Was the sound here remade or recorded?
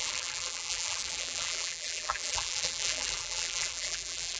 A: remade